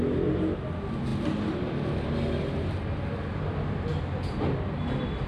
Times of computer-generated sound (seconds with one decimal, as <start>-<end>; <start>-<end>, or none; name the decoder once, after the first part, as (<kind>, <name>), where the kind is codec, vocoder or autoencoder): none